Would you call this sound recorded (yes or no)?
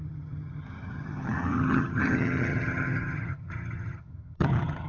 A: no